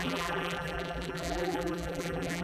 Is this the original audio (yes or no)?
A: no